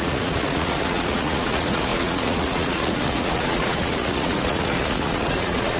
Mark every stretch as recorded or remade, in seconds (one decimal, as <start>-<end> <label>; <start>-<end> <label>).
0.0-5.8 remade